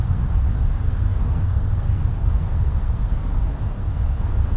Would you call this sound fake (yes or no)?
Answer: yes